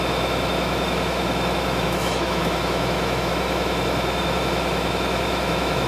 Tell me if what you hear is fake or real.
fake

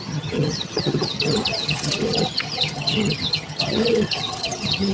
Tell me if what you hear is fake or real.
fake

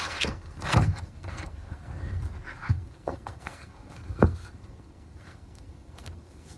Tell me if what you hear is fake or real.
fake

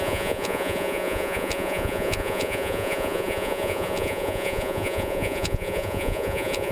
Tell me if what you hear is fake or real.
fake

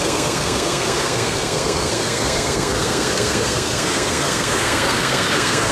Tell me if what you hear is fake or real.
fake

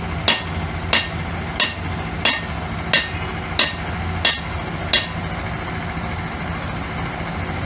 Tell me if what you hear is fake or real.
real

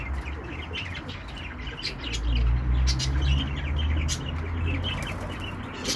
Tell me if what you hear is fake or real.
real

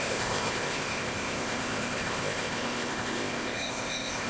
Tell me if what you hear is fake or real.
fake